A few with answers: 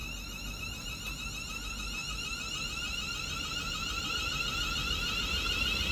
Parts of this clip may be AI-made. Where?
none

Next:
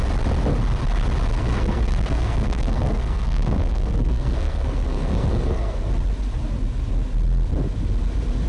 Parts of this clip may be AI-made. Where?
1.3-5.9